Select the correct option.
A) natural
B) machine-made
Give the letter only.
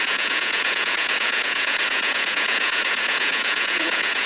B